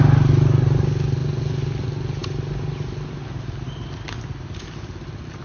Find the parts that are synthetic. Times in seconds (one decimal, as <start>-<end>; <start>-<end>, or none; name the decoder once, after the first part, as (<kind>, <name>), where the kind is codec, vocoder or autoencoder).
none